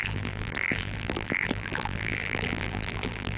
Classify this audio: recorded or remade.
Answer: remade